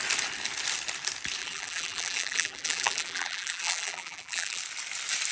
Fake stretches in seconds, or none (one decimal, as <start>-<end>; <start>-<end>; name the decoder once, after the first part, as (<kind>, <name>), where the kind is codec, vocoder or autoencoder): 1.4-4.6 (vocoder, BigVGAN v2)